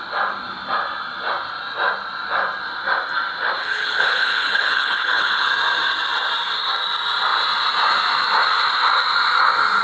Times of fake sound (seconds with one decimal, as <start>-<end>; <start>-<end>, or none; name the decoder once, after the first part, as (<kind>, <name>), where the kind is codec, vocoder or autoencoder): 3.6-5.5 (codec, HILCodec)